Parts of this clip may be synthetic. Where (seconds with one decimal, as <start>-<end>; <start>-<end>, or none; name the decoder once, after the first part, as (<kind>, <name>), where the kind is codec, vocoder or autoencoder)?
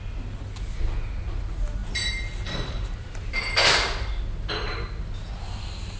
1.8-3.4 (vocoder, BigVGAN v2)